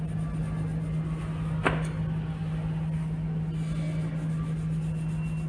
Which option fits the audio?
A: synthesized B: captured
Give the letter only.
B